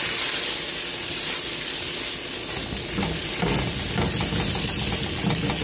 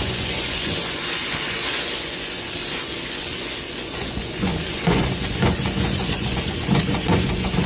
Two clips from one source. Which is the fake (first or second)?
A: second